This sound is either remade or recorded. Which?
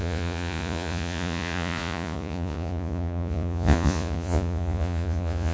remade